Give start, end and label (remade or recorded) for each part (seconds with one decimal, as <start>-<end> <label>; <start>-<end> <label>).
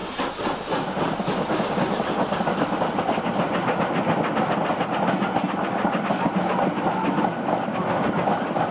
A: 0.0-8.7 recorded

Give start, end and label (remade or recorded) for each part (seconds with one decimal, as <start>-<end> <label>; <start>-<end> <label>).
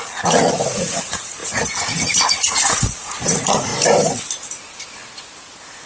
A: 0.0-3.7 remade; 3.7-5.9 recorded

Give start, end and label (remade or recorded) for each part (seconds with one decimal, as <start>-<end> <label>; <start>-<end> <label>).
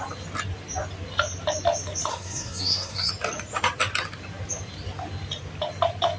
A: 0.0-2.1 recorded; 2.1-3.1 remade; 3.1-6.2 recorded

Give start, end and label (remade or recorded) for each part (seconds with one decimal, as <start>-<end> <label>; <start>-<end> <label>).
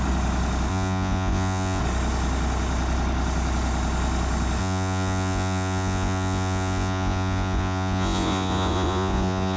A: 0.0-0.7 recorded; 0.7-1.8 remade; 1.8-4.6 recorded; 4.6-9.6 remade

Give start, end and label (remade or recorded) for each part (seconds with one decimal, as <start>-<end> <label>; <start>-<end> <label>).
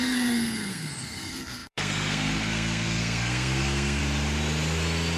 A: 0.0-4.0 remade; 4.0-5.2 recorded